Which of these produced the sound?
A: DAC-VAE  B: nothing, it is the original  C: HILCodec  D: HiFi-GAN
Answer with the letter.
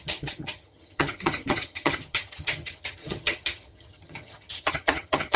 D